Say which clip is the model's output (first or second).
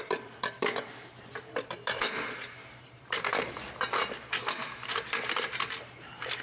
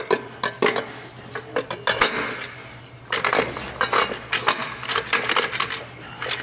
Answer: first